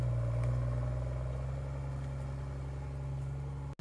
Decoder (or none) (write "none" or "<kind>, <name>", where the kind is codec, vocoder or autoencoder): none